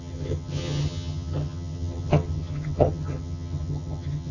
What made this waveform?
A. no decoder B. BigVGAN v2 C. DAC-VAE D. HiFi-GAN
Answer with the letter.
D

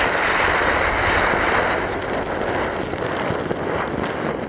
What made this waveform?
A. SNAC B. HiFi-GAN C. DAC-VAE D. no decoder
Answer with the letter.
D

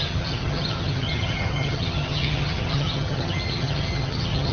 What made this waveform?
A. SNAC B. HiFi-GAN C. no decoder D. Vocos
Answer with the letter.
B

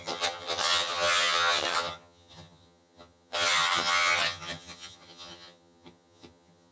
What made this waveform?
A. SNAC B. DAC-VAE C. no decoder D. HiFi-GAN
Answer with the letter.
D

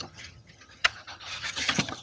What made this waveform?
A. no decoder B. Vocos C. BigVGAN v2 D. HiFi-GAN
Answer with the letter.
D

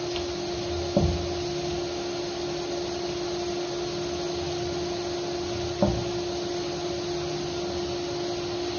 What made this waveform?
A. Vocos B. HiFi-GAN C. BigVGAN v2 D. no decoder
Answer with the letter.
D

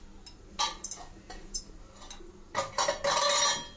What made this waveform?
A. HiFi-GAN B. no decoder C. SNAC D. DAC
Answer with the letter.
B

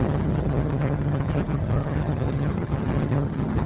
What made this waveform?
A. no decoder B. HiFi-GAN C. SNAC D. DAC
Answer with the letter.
B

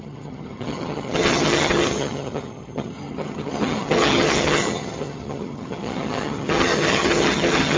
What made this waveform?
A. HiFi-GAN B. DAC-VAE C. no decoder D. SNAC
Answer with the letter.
A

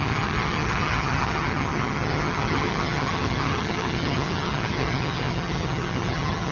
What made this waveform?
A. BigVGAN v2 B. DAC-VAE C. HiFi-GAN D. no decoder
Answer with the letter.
C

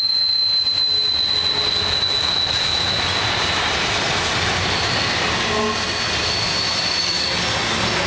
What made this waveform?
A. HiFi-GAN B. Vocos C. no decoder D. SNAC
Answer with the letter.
C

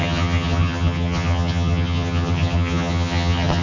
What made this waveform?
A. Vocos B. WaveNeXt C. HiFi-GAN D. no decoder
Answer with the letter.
C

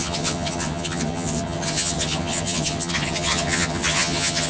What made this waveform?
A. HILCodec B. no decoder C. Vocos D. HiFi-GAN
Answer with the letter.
D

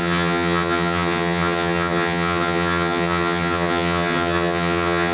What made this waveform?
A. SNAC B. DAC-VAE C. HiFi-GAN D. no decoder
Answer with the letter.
C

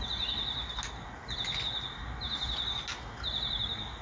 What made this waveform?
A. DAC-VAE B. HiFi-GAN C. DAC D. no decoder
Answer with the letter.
D